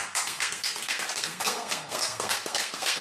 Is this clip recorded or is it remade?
remade